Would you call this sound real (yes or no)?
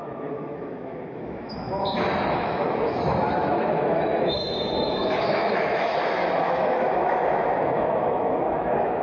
no